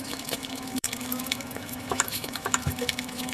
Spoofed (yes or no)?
yes